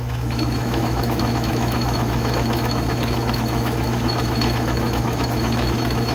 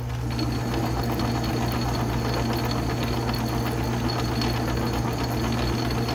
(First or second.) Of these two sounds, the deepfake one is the first